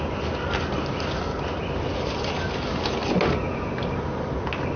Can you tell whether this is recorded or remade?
recorded